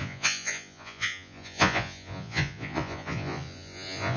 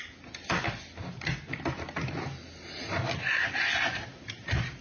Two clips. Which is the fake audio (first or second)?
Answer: first